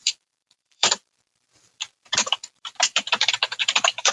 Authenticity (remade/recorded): remade